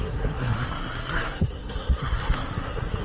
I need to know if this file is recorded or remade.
remade